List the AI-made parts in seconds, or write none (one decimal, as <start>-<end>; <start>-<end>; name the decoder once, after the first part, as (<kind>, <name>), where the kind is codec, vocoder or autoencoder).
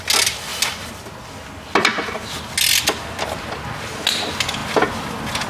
none